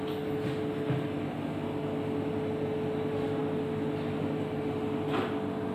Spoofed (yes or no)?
no